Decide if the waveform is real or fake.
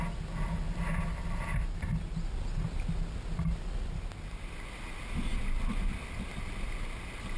real